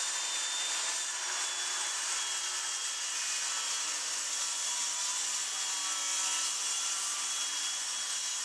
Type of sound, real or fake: real